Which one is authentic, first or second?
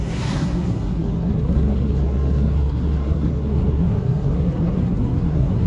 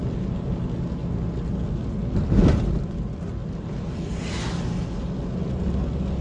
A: second